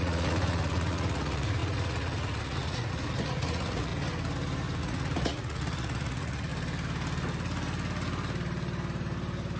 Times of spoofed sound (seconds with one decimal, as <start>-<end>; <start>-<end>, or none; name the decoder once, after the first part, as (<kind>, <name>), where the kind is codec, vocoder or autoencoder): 0.0-3.9 (vocoder, Vocos); 4.8-6.5